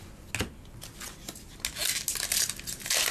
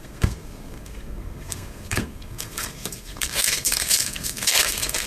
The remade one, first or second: second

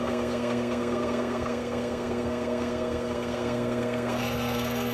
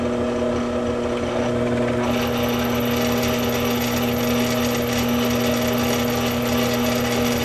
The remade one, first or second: first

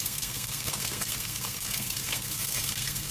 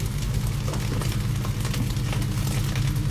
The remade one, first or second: first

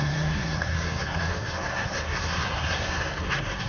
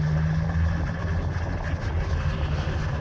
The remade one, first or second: first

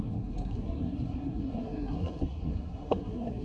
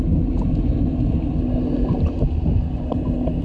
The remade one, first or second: first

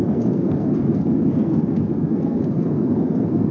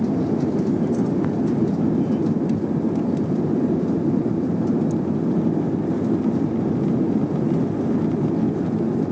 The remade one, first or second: first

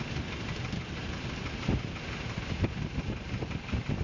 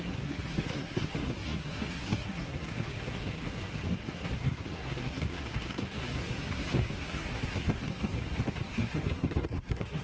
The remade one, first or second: second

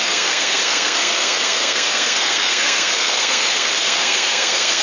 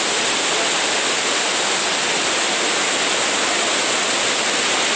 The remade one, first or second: first